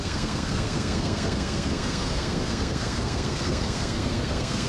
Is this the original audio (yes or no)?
no